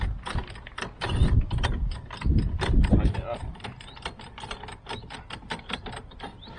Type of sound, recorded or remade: recorded